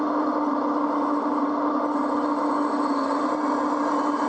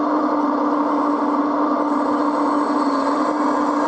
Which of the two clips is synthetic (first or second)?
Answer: first